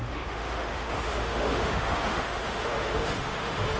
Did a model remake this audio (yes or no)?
yes